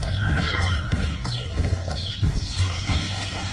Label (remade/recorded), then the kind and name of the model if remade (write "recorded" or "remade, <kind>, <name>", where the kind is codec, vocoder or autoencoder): remade, codec, SNAC